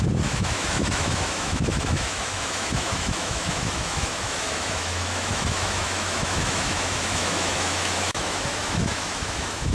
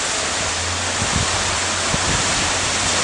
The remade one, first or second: first